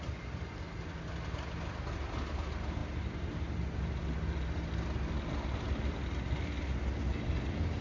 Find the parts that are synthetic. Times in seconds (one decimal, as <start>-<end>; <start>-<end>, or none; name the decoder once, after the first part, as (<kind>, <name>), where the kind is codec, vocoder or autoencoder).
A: none